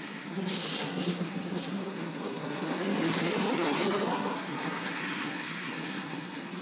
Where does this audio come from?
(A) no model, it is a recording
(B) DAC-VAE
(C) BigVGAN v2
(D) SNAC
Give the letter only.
D